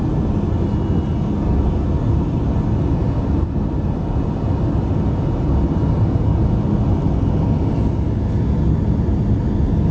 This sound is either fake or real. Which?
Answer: real